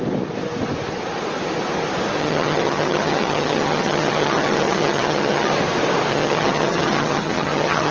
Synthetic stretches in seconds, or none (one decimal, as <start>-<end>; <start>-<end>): 2.2-5.5; 6.1-7.9